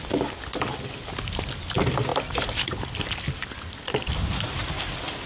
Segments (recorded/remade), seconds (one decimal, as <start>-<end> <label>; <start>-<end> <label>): 0.0-2.1 recorded; 2.1-4.7 remade; 4.7-5.3 recorded